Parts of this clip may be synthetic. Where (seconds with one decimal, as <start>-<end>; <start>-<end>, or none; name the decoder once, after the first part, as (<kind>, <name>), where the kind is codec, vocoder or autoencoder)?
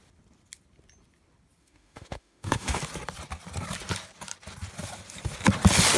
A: 1.6-2.8 (autoencoder, DAC-VAE)